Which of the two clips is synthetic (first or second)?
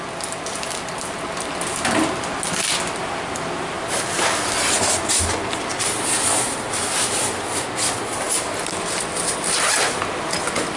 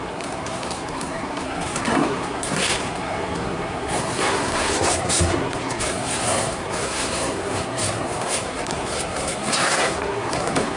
second